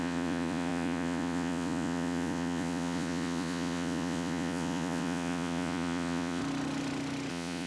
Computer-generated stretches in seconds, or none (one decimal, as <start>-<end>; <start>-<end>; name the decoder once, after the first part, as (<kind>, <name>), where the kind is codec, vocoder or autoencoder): 0.0-6.4 (vocoder, Vocos); 7.3-7.7